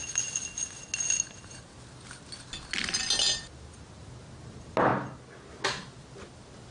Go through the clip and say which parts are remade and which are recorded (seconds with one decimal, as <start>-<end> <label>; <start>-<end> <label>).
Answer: 0.0-6.7 recorded